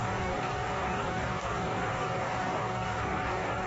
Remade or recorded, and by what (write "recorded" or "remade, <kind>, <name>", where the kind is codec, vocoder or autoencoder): remade, codec, DAC